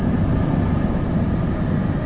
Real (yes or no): yes